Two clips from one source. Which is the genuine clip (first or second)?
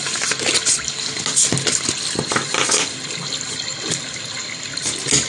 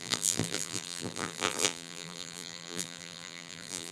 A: first